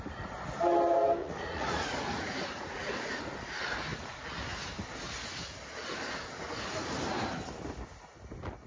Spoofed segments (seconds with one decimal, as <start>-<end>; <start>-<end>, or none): 1.2-3.2